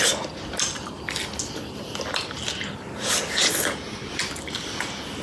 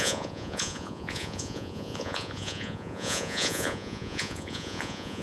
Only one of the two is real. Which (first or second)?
first